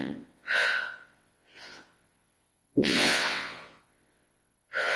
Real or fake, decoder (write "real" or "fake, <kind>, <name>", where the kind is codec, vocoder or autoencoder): fake, vocoder, WaveNeXt